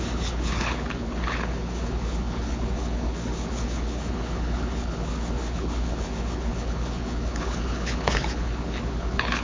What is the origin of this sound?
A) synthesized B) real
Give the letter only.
A